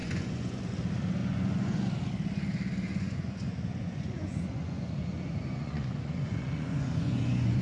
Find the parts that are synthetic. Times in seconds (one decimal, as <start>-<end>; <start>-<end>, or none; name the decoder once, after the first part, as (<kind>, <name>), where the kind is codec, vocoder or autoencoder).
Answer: 0.0-0.6 (vocoder, Vocos); 1.2-1.9; 2.9-7.6